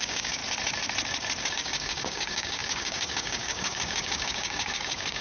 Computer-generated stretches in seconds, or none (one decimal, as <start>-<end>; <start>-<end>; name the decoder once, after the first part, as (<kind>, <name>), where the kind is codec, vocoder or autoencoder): 0.0-0.4 (codec, DAC); 1.5-5.2